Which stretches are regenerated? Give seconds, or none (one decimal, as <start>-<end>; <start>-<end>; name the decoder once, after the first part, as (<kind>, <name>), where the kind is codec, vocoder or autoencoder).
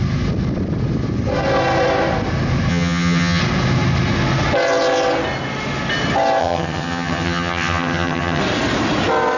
2.7-3.4 (vocoder, HiFi-GAN); 6.4-8.4